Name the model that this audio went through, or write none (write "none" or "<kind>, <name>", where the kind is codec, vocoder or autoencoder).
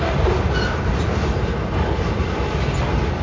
none